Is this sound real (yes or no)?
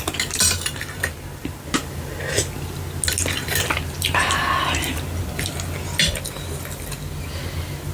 yes